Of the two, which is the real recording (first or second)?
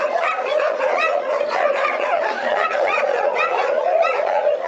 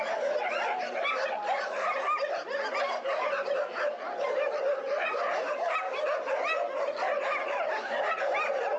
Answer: second